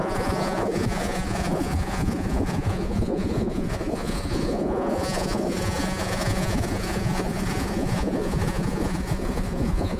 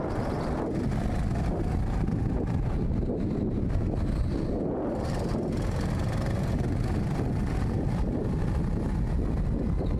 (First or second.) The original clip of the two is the second